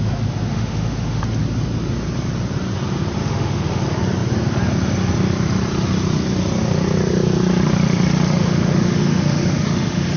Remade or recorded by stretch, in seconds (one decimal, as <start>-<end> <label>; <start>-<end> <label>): 0.0-0.5 recorded; 0.5-1.2 remade; 1.2-3.2 recorded; 3.2-3.8 remade; 3.8-8.4 recorded; 8.4-10.2 remade